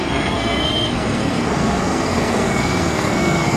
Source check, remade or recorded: remade